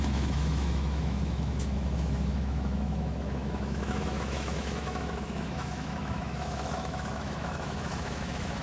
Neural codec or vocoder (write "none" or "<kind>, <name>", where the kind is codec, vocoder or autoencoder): autoencoder, DAC-VAE